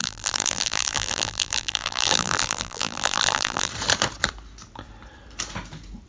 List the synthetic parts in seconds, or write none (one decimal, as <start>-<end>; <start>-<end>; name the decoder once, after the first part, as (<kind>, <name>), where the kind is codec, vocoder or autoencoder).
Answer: 0.0-3.7 (vocoder, BigVGAN v2)